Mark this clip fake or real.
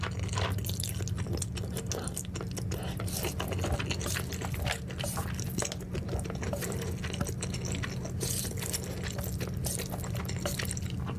real